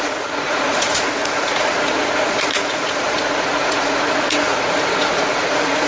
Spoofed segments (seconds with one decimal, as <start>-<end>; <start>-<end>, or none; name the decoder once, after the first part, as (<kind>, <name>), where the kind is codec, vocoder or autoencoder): 0.0-5.9 (vocoder, Vocos)